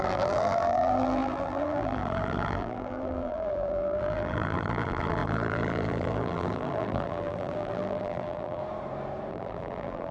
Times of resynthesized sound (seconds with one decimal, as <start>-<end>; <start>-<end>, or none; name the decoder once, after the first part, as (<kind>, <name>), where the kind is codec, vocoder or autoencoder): 0.0-8.6 (vocoder, BigVGAN v2); 9.3-10.1